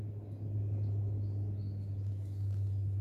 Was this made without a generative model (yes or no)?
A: yes